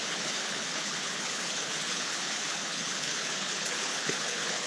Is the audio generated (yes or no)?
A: yes